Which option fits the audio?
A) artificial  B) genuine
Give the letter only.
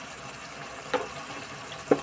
B